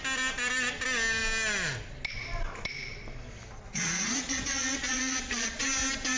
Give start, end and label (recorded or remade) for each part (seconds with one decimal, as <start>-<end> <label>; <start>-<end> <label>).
0.0-3.7 recorded; 3.7-5.6 remade; 5.6-6.2 recorded